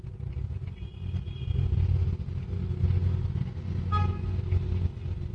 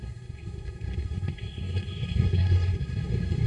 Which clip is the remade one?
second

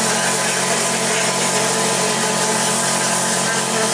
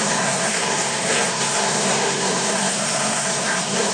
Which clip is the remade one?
second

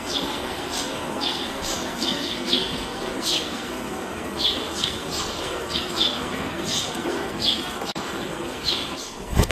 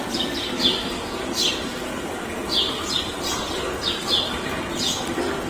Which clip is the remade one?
first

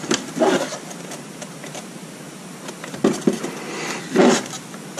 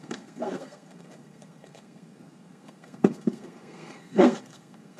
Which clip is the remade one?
second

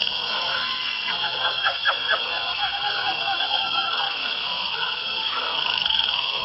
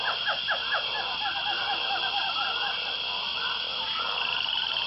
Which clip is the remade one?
first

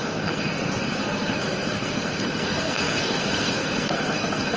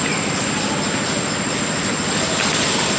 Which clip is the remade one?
first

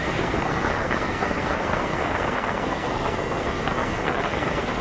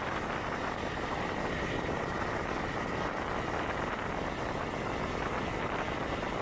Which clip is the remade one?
first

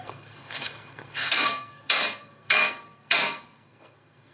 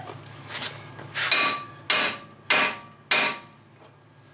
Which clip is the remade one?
first